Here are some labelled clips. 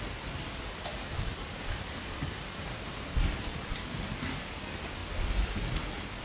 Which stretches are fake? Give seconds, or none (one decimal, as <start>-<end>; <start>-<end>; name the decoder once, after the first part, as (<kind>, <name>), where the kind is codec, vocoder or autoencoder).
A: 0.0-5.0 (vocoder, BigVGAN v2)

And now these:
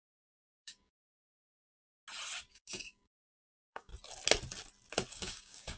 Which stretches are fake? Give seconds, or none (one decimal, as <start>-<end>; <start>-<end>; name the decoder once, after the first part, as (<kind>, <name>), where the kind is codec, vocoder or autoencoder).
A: 0.0-1.3 (codec, DAC); 2.5-3.9; 5.1-5.8

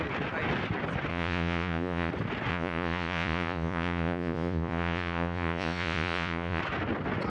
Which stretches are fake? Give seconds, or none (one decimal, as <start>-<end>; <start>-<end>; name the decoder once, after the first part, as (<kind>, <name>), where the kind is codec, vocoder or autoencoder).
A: 1.1-2.1 (vocoder, Vocos); 2.5-6.6